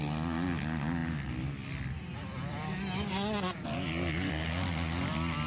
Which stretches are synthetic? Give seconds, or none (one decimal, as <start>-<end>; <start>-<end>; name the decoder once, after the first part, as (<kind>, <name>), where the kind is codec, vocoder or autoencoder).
none